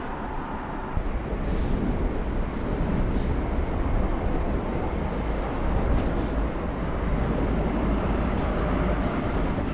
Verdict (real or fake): fake